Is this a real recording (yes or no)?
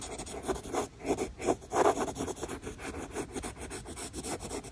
yes